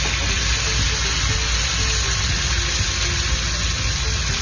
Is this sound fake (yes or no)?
no